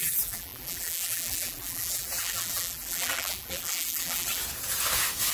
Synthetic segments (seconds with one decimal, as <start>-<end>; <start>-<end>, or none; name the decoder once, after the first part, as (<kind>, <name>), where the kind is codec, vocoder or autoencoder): 0.0-4.4 (vocoder, BigVGAN v2)